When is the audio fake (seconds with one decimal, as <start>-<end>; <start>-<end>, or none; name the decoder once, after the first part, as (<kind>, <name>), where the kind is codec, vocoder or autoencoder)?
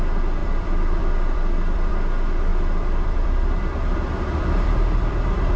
0.4-1.9 (vocoder, BigVGAN v2); 2.5-5.6